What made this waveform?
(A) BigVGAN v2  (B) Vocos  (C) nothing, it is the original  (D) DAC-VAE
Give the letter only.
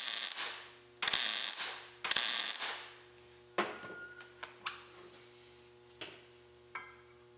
C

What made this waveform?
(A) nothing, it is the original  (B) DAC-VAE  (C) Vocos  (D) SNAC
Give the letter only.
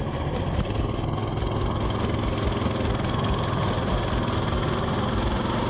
A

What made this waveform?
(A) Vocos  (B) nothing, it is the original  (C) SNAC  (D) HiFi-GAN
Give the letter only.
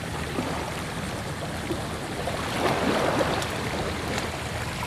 B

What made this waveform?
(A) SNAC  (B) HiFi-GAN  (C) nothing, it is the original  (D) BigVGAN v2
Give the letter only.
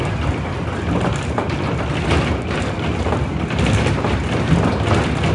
C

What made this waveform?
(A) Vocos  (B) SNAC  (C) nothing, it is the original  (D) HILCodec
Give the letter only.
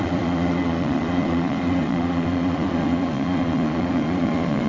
A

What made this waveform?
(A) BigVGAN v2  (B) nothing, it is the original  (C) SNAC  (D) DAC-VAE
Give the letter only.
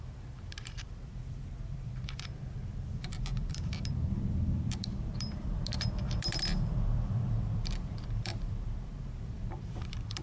A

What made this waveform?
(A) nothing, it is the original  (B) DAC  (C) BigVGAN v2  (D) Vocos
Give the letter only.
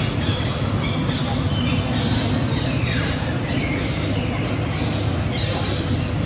A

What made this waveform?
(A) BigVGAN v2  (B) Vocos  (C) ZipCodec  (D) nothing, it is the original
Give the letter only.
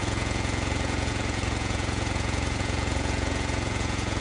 B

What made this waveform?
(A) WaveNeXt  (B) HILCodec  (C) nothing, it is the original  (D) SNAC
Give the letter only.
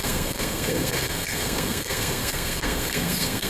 D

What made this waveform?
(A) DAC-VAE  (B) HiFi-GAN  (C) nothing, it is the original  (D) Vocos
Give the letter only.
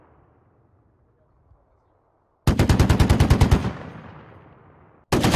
C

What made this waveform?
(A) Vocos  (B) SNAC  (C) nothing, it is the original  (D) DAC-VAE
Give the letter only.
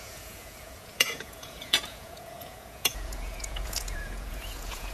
A